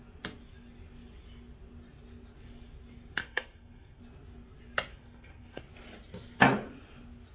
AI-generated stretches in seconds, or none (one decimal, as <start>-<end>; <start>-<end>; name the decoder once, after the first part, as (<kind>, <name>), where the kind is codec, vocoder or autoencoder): 3.2-4.0 (codec, SNAC); 4.9-5.6

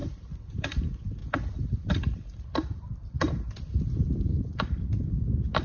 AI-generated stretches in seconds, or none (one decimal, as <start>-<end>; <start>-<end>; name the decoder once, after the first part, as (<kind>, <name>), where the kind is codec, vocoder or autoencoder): 0.0-0.6 (vocoder, BigVGAN v2); 1.2-3.2

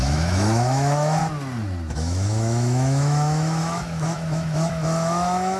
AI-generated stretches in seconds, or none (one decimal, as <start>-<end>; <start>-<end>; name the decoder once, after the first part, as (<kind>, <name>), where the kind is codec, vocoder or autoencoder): 0.0-1.2 (autoencoder, DAC-VAE); 1.9-5.6

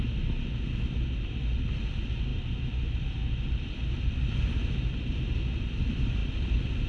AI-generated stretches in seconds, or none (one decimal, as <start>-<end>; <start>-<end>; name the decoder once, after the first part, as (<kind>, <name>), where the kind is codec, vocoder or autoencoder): 6.2-6.9 (vocoder, BigVGAN v2)

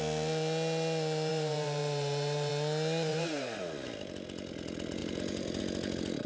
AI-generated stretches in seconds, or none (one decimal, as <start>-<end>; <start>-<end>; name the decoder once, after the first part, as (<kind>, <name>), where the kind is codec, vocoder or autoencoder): 1.3-2.5 (vocoder, BigVGAN v2); 3.1-3.6; 5.0-5.6

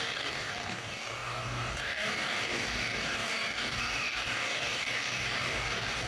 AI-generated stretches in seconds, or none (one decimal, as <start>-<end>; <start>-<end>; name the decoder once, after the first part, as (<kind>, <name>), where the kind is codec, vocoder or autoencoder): 0.0-6.1 (codec, DAC)